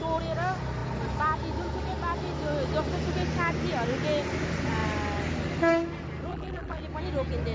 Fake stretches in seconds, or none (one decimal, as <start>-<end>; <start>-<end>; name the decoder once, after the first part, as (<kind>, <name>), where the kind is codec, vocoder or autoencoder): 6.3-6.8 (vocoder, BigVGAN v2)